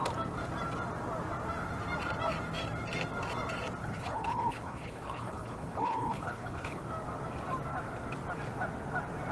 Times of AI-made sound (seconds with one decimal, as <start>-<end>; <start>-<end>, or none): 3.8-6.8

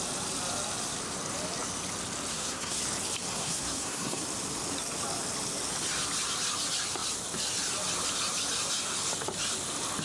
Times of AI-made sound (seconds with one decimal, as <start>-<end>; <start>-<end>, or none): 2.3-2.8; 3.3-4.2

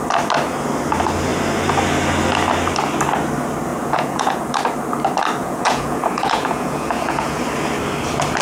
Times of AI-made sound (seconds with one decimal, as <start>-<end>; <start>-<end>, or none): 3.7-4.4; 5.4-7.4

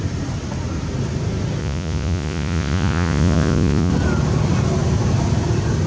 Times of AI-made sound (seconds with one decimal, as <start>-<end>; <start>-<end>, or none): 1.6-3.9

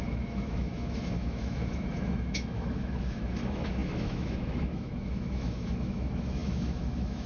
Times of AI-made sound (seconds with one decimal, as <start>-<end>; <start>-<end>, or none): 0.0-7.3

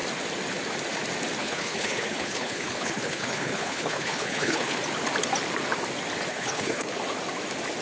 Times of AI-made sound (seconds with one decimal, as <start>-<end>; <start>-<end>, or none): 1.4-4.8; 6.3-6.9

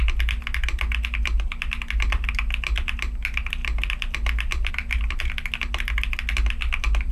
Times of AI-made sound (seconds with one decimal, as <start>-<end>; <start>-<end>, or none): none